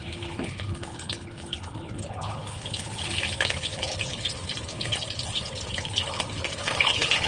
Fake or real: fake